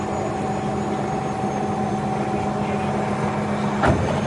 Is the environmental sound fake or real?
real